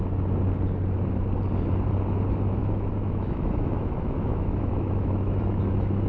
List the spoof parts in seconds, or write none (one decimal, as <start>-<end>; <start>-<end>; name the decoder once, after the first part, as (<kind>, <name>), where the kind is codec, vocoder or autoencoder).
2.6-5.4 (autoencoder, DAC-VAE)